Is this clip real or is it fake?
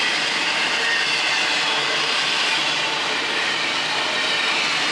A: fake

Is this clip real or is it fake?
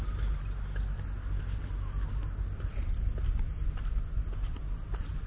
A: real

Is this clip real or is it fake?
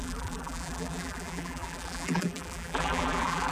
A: fake